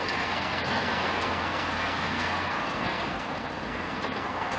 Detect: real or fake fake